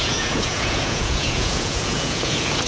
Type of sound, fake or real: fake